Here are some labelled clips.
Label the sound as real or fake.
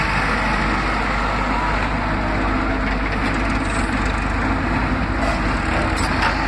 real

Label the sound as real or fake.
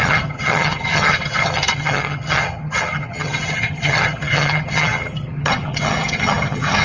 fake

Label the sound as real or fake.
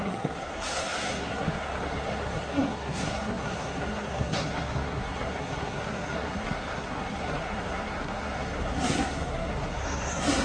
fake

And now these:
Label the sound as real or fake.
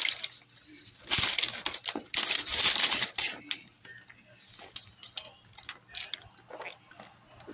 real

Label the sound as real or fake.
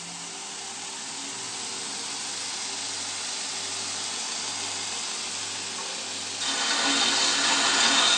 real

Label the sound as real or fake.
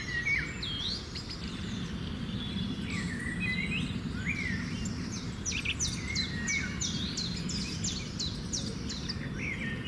real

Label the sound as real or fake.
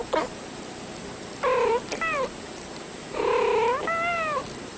real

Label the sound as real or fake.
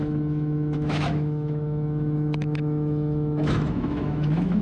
fake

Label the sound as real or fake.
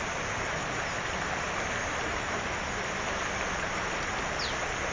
real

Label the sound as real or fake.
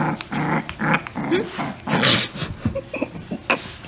real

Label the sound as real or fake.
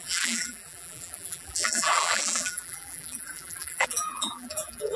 fake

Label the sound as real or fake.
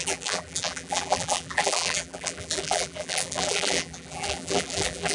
fake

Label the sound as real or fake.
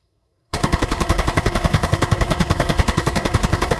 fake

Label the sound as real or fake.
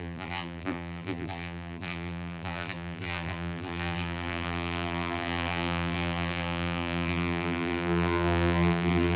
fake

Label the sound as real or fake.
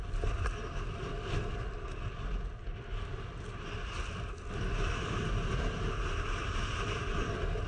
real